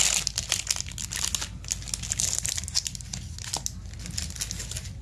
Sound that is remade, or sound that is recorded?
recorded